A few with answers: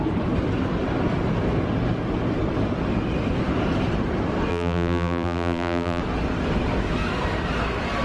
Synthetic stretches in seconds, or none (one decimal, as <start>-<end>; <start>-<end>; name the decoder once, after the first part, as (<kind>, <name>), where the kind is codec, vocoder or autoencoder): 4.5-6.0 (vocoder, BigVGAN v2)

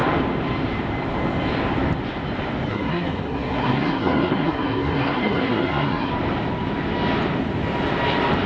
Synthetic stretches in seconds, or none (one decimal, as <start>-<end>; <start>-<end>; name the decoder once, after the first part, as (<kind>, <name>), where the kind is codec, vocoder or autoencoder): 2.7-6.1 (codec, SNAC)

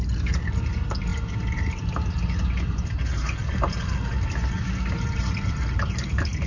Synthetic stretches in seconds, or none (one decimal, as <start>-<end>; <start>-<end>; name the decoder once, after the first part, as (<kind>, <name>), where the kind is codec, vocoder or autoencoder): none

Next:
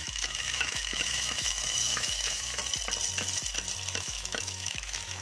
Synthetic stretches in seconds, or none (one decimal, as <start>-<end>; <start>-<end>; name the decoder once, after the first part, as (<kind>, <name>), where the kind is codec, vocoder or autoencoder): 0.0-2.6 (autoencoder, DAC-VAE); 4.0-5.2

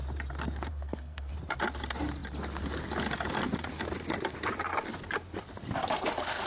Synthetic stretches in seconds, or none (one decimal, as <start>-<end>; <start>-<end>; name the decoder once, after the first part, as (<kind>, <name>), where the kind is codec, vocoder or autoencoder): 0.7-1.3 (codec, SNAC)